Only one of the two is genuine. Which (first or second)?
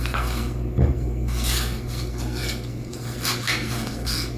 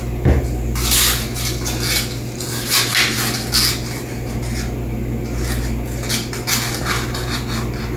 second